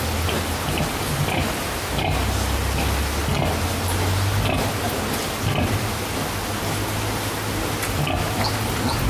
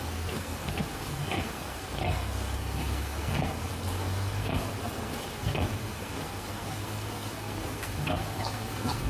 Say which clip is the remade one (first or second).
second